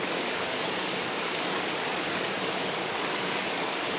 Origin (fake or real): fake